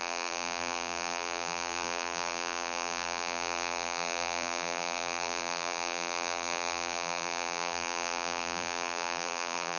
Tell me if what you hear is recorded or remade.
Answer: remade